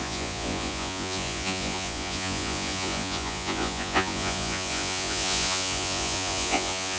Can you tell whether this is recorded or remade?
remade